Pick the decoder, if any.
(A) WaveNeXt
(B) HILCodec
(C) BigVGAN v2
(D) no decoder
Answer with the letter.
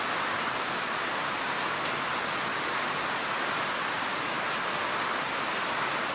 D